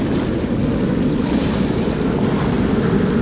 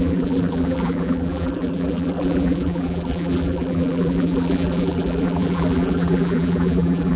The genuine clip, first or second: first